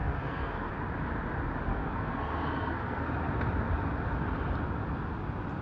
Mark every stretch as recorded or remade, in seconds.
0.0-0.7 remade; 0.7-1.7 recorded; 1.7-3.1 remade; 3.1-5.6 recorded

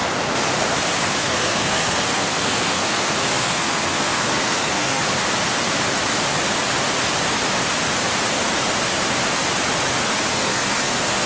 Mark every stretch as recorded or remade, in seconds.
0.0-1.2 recorded; 1.2-5.0 remade; 5.0-10.3 recorded; 10.3-11.3 remade

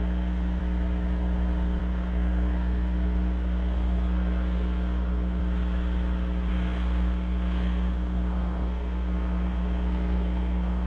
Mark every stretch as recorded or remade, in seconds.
0.0-0.6 remade; 0.6-1.8 recorded; 1.8-5.4 remade; 5.4-6.5 recorded; 6.5-10.9 remade

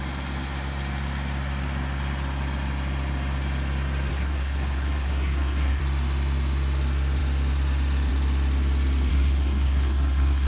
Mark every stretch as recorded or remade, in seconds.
0.0-4.1 recorded; 4.1-5.8 remade; 5.8-9.1 recorded; 9.1-10.5 remade

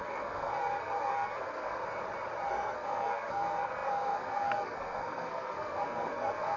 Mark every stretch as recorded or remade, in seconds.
0.0-1.8 remade; 1.8-2.5 recorded; 2.5-6.6 remade